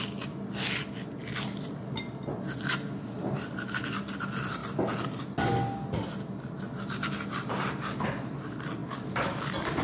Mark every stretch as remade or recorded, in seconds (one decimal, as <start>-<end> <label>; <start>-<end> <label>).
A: 0.0-9.8 recorded